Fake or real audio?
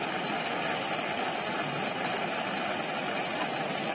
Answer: fake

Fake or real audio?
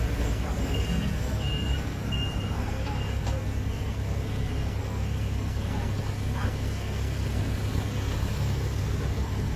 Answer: fake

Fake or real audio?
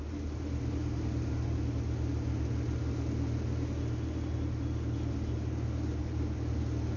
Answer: real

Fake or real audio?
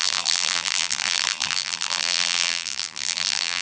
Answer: fake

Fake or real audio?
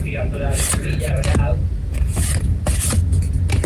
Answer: real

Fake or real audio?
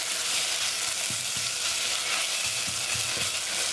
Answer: real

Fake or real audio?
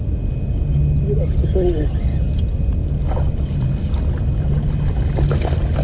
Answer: real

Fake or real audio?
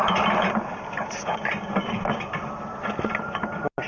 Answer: real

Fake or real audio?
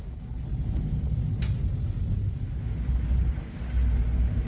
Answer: real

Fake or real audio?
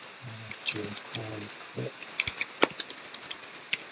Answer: real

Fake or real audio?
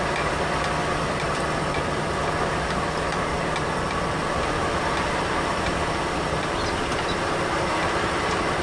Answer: real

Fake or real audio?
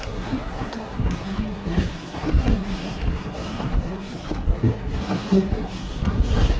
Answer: fake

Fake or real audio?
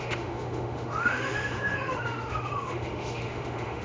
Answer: fake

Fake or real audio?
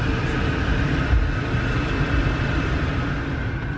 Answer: real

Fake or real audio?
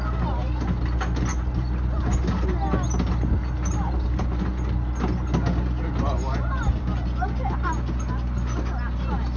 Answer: real